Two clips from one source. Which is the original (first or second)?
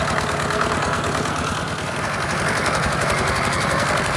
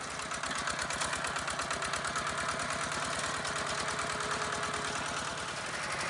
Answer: second